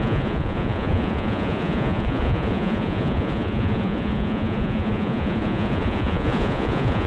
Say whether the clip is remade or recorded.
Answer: remade